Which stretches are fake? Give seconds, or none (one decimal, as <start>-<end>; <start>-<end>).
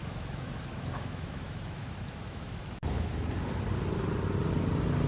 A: 0.0-3.1